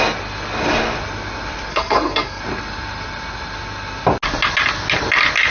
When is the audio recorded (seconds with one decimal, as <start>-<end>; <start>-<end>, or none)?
0.0-1.7; 2.4-5.5